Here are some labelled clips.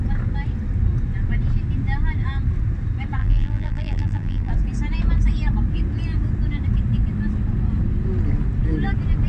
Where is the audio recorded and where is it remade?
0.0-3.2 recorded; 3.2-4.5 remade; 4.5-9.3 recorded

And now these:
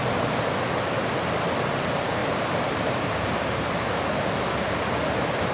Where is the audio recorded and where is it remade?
0.0-2.2 recorded; 2.2-4.1 remade; 4.1-5.5 recorded

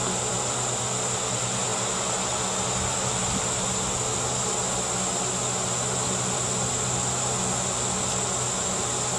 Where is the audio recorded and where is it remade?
0.0-9.2 recorded

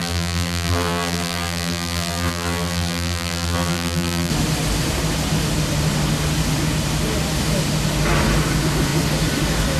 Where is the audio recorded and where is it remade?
0.0-4.3 remade; 4.3-9.8 recorded

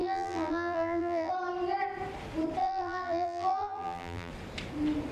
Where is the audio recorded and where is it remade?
0.0-1.3 remade; 1.3-2.6 recorded; 2.6-4.3 remade; 4.3-5.1 recorded